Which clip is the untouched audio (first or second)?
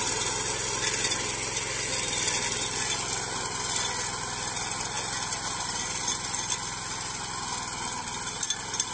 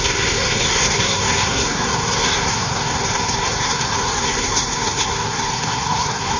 first